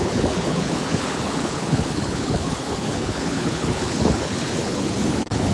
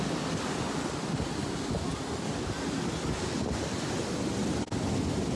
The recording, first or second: second